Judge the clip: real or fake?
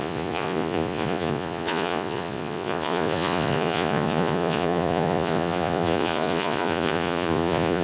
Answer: fake